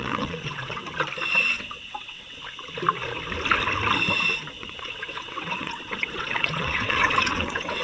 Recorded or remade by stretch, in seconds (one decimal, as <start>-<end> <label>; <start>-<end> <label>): 0.0-0.8 remade; 0.8-1.5 recorded; 1.5-2.4 remade; 2.4-4.6 recorded; 4.6-7.8 remade